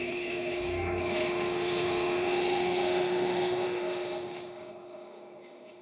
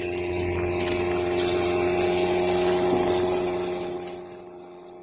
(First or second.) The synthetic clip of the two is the first